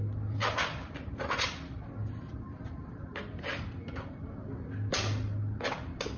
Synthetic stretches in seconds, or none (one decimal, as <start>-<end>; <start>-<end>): none

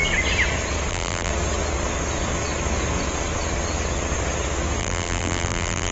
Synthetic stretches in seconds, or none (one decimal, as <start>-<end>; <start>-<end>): 0.9-1.3; 4.8-5.9